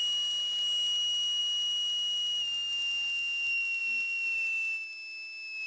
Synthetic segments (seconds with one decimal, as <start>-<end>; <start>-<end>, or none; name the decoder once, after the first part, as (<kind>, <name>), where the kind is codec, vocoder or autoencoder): none